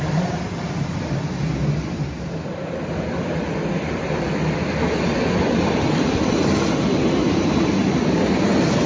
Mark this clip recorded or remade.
recorded